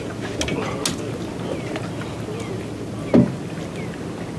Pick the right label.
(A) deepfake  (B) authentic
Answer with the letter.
B